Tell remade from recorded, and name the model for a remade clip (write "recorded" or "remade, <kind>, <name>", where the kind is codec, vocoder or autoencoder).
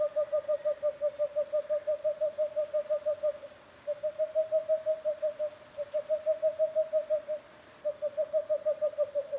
recorded